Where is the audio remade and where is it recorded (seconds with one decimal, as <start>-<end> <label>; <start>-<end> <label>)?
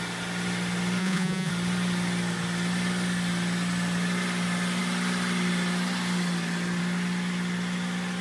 0.0-1.0 recorded; 1.0-1.5 remade; 1.5-8.2 recorded